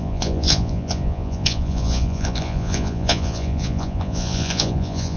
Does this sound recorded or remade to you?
remade